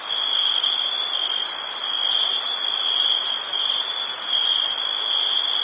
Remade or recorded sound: remade